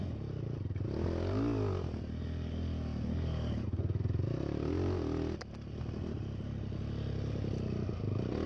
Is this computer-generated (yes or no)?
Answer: no